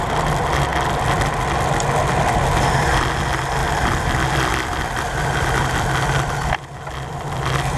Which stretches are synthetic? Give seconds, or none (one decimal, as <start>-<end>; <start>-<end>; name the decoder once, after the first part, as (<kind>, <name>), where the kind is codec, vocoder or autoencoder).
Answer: none